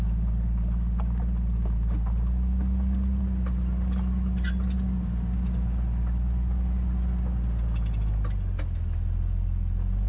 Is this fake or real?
real